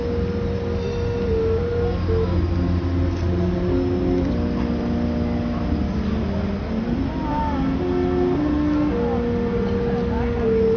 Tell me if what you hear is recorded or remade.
recorded